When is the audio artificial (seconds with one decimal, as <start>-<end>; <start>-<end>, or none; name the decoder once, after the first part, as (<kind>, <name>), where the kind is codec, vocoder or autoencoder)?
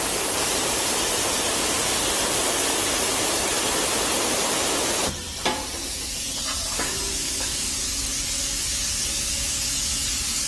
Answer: 6.7-10.5 (codec, DAC)